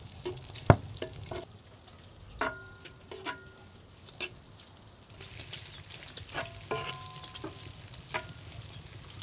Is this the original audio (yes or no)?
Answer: yes